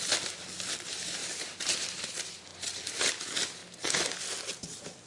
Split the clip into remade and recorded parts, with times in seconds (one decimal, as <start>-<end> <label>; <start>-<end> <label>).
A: 0.0-1.2 recorded; 1.2-2.1 remade; 2.1-5.1 recorded